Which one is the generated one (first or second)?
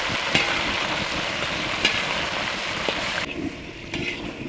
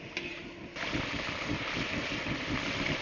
first